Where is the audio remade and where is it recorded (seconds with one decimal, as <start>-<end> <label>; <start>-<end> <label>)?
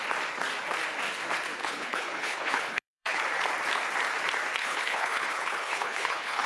0.0-1.6 recorded; 1.6-3.2 remade; 3.2-4.6 recorded; 4.6-6.5 remade